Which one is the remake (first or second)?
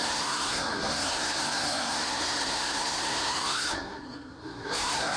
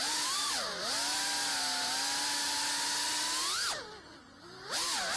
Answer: first